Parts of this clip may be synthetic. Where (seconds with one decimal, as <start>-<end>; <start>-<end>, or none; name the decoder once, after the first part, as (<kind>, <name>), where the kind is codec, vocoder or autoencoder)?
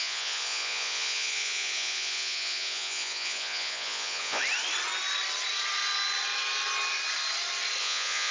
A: 0.0-4.4 (vocoder, Vocos); 7.8-8.3